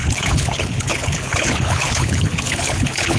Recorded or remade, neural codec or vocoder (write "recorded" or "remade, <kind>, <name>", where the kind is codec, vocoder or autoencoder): remade, codec, HILCodec